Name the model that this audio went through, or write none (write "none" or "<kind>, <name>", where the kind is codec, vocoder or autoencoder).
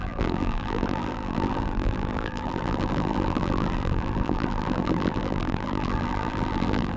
vocoder, BigVGAN v2